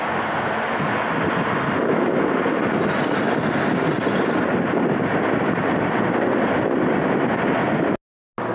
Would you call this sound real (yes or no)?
yes